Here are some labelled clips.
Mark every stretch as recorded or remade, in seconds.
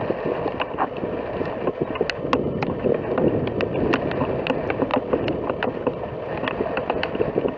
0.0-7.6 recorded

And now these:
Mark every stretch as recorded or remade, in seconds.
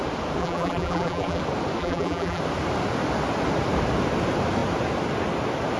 0.0-0.4 recorded; 0.4-1.4 remade; 1.4-1.8 recorded; 1.8-2.4 remade; 2.4-5.8 recorded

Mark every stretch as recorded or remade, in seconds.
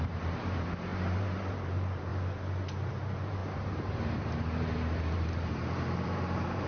0.0-2.1 remade; 2.1-2.9 recorded; 2.9-6.7 remade